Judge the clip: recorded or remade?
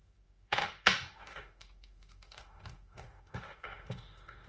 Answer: remade